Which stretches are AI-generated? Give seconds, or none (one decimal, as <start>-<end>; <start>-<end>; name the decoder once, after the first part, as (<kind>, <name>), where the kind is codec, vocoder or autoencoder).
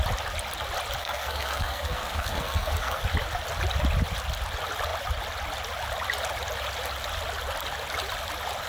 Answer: 1.0-3.0 (codec, SNAC)